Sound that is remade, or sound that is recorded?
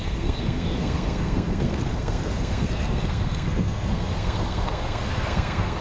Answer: remade